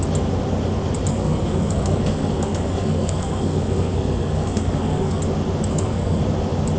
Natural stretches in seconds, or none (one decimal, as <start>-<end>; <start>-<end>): 0.0-1.1; 5.2-5.7; 6.2-6.8